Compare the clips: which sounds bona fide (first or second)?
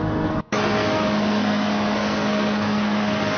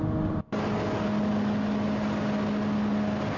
second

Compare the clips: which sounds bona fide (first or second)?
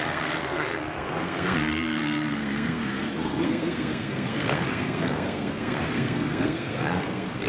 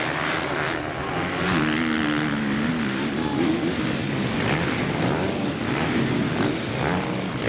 second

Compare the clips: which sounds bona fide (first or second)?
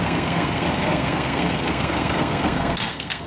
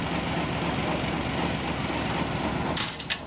second